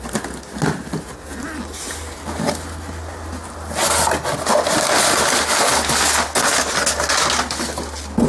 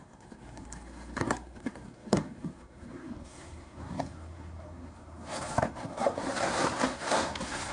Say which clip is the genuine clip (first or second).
first